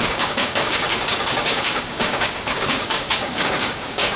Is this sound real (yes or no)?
no